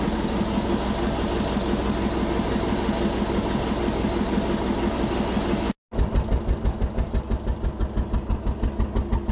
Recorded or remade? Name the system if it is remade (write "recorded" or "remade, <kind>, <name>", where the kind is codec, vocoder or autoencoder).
recorded